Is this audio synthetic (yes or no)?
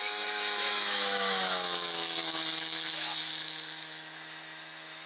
yes